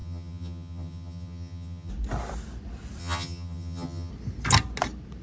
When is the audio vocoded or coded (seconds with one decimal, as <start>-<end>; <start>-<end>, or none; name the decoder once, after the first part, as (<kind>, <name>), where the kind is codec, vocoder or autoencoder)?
0.0-1.9 (vocoder, HiFi-GAN); 3.0-4.1

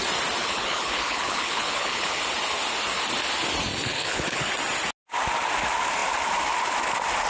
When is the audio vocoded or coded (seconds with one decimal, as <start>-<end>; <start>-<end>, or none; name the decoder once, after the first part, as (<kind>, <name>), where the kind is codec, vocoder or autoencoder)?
0.4-2.2 (codec, HILCodec); 3.9-4.5

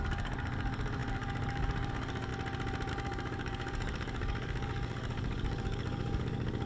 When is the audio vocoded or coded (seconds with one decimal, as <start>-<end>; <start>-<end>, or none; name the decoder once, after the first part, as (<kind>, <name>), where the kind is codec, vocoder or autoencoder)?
0.0-2.3 (codec, DAC); 2.9-6.7

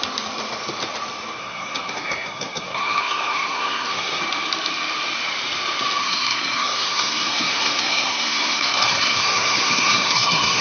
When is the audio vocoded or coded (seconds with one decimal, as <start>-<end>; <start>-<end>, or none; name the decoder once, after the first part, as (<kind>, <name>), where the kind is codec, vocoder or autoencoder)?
1.4-4.2 (codec, SNAC); 6.0-10.6